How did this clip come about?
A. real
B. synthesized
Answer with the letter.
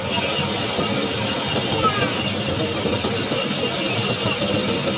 A